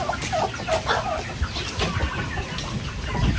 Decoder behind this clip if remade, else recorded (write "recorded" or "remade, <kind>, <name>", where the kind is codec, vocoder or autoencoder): recorded